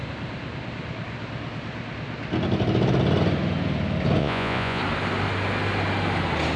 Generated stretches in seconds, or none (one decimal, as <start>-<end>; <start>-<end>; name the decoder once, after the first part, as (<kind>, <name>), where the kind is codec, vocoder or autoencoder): 4.2-4.8 (vocoder, Vocos)